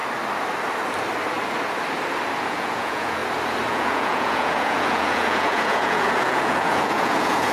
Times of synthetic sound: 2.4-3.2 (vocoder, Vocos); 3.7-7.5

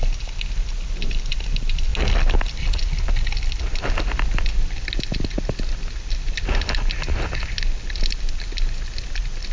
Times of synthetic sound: none

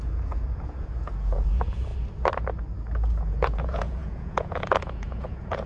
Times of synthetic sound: 0.0-1.9 (vocoder, Vocos); 3.2-5.7

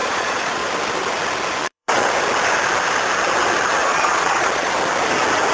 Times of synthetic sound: 0.0-0.7 (vocoder, Vocos); 1.6-2.1; 3.8-4.7